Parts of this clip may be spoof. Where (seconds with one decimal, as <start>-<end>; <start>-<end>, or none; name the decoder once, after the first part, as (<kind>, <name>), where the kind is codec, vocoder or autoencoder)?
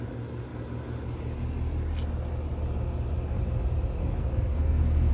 4.0-5.1 (codec, SNAC)